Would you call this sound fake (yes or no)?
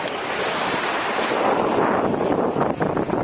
no